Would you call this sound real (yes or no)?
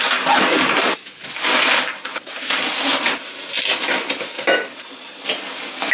yes